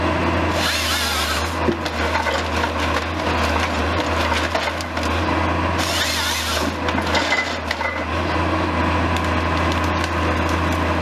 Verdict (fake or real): real